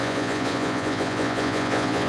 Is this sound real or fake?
fake